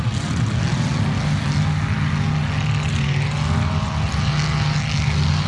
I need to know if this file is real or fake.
real